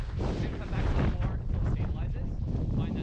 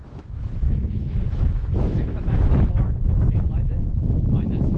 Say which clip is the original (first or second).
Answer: first